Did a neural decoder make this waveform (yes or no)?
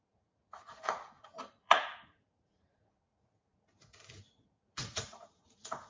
yes